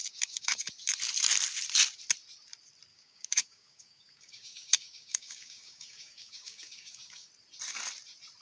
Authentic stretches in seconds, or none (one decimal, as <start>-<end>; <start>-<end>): 0.7-2.9; 7.3-8.4